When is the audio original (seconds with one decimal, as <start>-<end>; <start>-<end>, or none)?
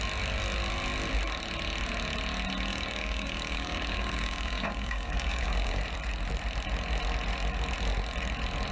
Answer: 0.0-2.7; 5.8-8.7